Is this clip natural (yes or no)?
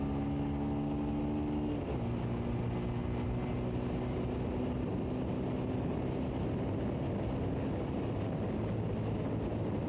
yes